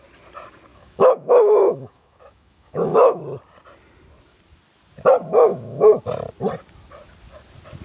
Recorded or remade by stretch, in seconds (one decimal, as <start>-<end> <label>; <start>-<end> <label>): 0.0-0.7 recorded; 0.7-3.2 remade; 3.2-5.3 recorded; 5.3-5.9 remade; 5.9-7.8 recorded